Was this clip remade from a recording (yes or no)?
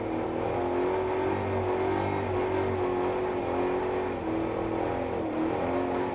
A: no